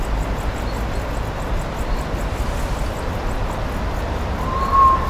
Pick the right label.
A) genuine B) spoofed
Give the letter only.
A